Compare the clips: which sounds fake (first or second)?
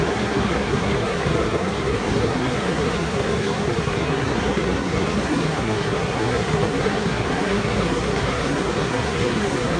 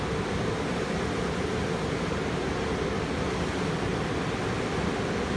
first